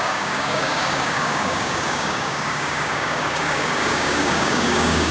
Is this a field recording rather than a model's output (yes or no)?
no